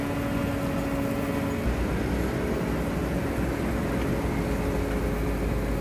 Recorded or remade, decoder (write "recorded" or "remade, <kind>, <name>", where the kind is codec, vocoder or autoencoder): recorded